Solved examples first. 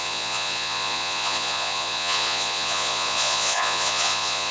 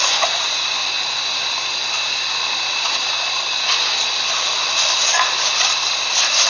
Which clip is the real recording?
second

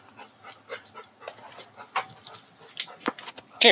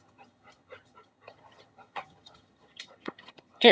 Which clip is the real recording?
first